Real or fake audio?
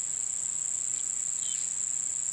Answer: real